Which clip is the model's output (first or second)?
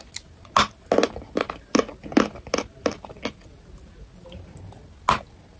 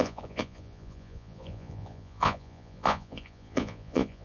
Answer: second